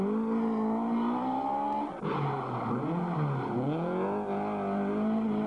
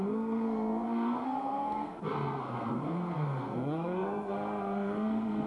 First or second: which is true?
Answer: first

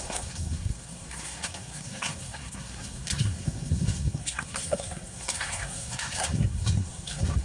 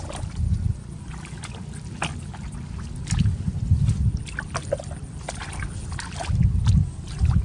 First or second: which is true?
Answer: second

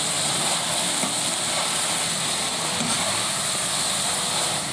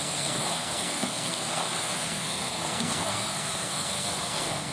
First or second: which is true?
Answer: first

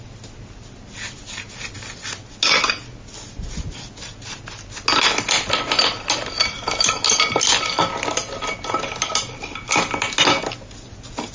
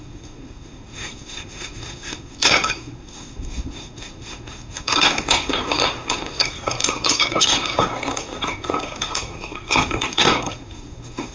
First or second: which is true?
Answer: first